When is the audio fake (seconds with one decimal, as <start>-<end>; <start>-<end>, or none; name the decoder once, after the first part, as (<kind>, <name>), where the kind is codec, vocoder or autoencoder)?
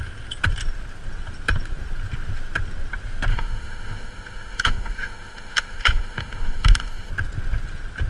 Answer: 3.3-7.1 (autoencoder, DAC-VAE)